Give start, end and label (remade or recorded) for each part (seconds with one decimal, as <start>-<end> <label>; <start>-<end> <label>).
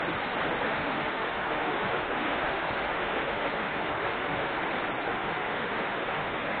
0.0-0.6 recorded; 0.6-4.6 remade; 4.6-5.1 recorded; 5.1-6.6 remade